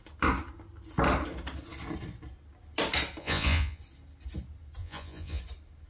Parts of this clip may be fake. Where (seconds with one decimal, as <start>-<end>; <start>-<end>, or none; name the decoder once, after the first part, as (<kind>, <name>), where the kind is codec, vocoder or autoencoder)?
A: 3.2-3.8 (vocoder, Vocos); 4.8-5.4